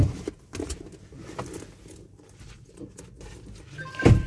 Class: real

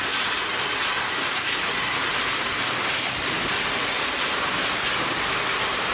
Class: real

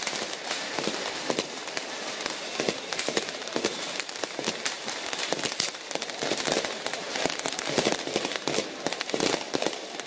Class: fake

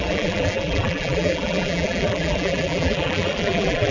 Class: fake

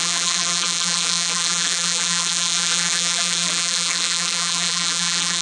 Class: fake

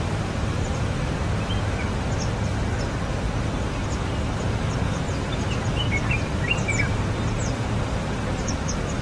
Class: fake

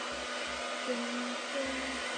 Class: real